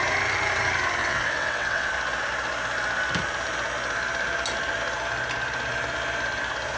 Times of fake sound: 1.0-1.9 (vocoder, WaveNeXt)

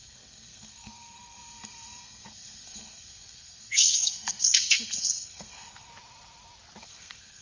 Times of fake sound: 0.0-5.9 (codec, SNAC); 6.8-7.4

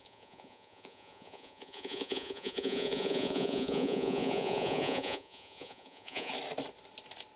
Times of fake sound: 0.0-6.3 (vocoder, Vocos)

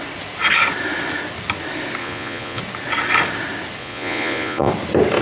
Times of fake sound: 2.0-2.6 (vocoder, Vocos); 3.8-4.7

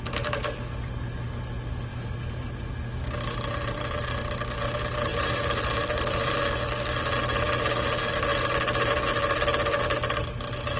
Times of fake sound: 1.9-2.7 (vocoder, BigVGAN v2); 5.1-6.4

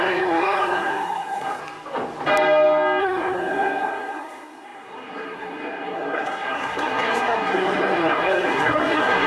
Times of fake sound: 0.0-1.6 (codec, SNAC); 3.0-9.3